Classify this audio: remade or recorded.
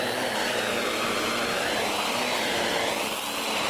recorded